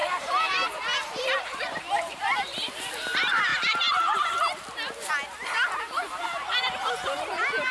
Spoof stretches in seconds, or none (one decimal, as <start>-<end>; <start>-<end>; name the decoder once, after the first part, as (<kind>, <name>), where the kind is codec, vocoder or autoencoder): 0.0-3.5 (vocoder, BigVGAN v2); 5.8-6.6